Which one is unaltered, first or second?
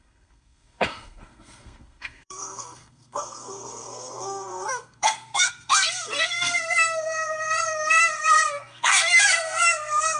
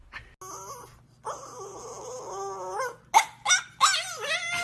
second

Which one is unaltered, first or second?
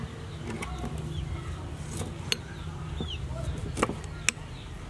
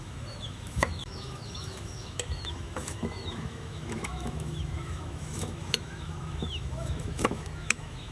first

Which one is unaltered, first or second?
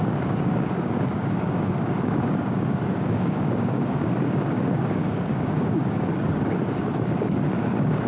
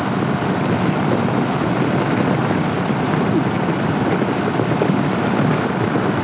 second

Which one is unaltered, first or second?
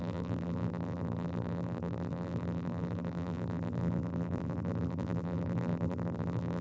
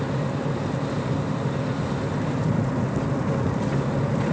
second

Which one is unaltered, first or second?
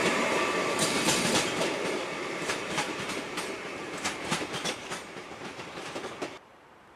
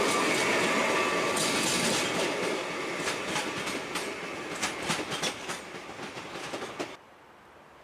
second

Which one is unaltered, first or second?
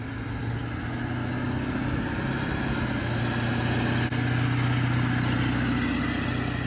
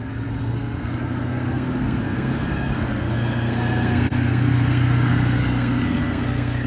first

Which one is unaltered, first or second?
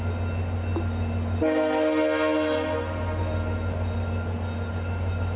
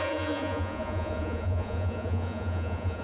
first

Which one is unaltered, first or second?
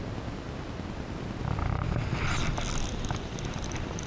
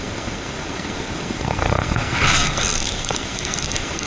first